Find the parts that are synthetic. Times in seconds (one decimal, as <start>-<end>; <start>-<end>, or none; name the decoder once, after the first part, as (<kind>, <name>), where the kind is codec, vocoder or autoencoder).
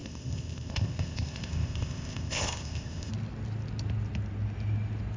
0.0-3.1 (codec, ZipCodec)